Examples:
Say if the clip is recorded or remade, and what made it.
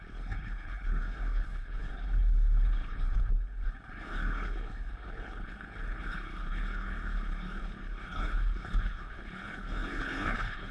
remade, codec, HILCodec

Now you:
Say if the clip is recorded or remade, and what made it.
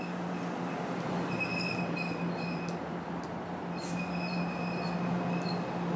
recorded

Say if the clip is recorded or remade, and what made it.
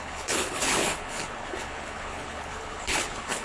remade, codec, HILCodec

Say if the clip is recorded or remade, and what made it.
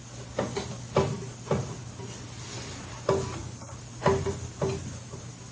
recorded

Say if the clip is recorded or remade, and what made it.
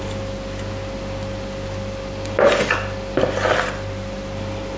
recorded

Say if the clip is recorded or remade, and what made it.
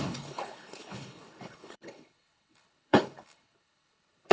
remade, codec, HILCodec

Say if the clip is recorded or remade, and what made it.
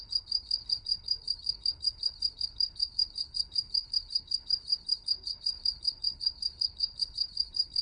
remade, codec, HILCodec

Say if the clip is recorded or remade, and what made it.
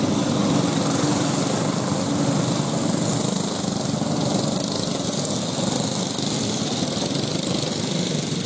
recorded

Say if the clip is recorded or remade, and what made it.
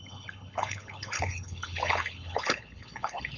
remade, codec, HILCodec